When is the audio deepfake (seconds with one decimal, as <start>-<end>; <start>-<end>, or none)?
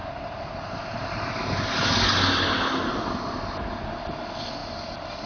none